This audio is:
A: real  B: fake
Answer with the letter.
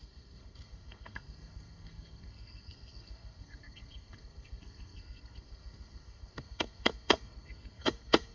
B